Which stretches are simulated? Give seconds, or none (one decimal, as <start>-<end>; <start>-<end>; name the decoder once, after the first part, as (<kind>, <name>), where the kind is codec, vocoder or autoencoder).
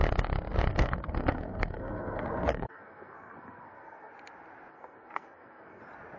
0.7-4.1 (codec, SNAC); 4.7-5.8